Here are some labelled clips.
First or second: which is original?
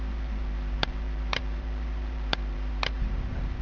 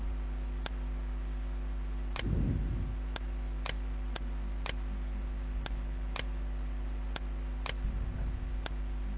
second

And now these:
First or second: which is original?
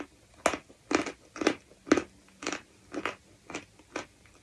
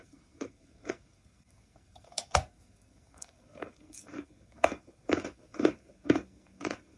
first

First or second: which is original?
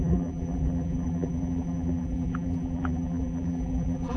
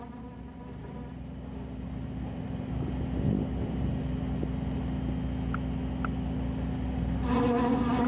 second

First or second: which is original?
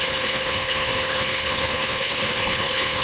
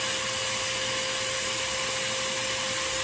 second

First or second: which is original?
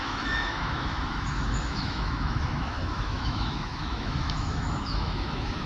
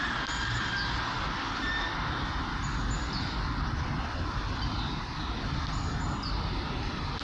second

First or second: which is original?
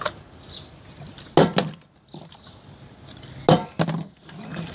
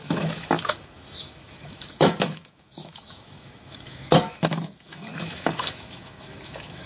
first